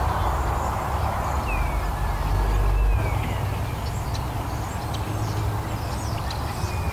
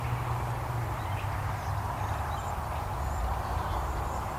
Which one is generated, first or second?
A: second